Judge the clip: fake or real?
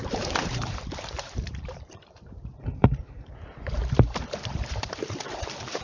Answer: fake